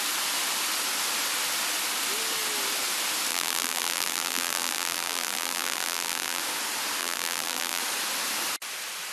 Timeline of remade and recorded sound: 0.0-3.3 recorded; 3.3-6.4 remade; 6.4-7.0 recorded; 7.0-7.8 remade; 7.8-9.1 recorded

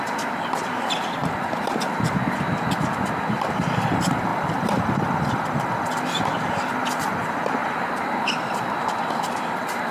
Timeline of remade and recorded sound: 0.0-1.2 remade; 1.2-3.3 recorded; 3.3-9.9 remade